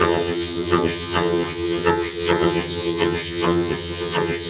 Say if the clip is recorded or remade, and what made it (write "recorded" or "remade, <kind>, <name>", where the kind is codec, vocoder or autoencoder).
remade, vocoder, HiFi-GAN